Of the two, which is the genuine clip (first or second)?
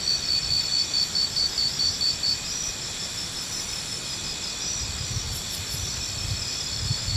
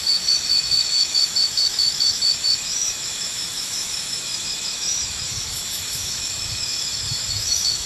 first